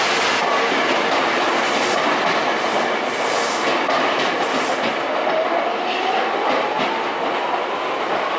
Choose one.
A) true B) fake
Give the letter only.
A